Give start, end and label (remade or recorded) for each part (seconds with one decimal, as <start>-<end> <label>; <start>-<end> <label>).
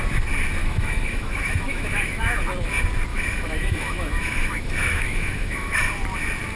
0.0-0.6 recorded; 0.6-2.4 remade; 2.4-3.1 recorded; 3.1-5.8 remade; 5.8-6.6 recorded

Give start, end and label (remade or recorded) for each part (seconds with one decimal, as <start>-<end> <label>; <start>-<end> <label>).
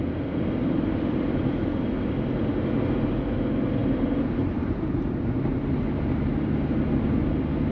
0.0-0.6 recorded; 0.6-1.9 remade; 1.9-3.8 recorded; 3.8-6.2 remade; 6.2-7.7 recorded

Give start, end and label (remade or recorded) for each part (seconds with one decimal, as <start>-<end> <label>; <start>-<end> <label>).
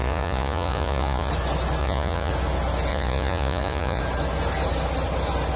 0.0-1.3 remade; 1.3-1.8 recorded; 1.8-2.3 remade; 2.3-2.9 recorded; 2.9-4.0 remade; 4.0-5.6 recorded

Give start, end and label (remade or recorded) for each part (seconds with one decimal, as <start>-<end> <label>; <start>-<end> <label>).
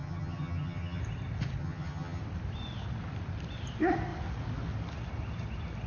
0.0-1.0 remade; 1.0-1.6 recorded; 1.6-2.2 remade; 2.2-5.9 recorded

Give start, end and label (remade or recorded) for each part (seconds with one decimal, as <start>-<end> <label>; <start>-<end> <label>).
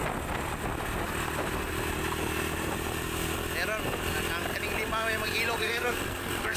0.0-5.6 recorded; 5.6-6.6 remade